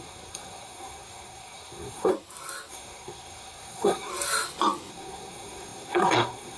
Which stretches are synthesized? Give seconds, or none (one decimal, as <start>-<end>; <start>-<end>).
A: 0.0-2.1; 2.7-4.1; 4.9-6.6